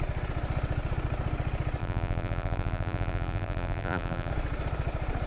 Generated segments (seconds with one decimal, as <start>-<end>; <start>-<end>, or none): 1.8-4.3